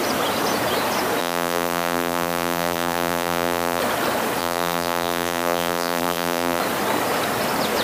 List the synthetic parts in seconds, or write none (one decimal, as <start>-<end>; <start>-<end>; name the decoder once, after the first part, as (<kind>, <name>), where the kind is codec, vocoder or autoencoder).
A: 1.2-3.8 (vocoder, BigVGAN v2); 4.4-6.6